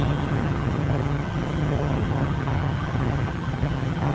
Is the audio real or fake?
fake